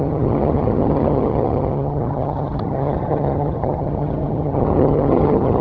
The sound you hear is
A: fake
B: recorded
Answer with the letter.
A